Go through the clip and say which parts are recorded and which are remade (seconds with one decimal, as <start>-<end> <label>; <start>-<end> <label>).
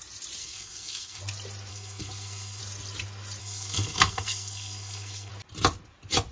0.0-0.4 recorded; 0.4-1.2 remade; 1.2-1.7 recorded; 1.7-2.6 remade; 2.6-3.4 recorded; 3.4-5.3 remade; 5.3-6.3 recorded